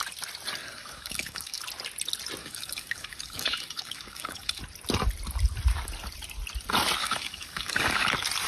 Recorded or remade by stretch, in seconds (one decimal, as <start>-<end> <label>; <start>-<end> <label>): 0.0-0.6 recorded; 0.6-1.6 remade; 1.6-2.4 recorded; 2.4-4.6 remade; 4.6-7.0 recorded; 7.0-8.1 remade; 8.1-8.5 recorded